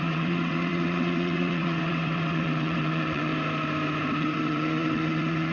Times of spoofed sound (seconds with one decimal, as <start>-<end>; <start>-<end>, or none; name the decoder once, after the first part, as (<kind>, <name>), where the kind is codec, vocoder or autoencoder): 0.0-3.3 (vocoder, WaveNeXt); 4.2-5.5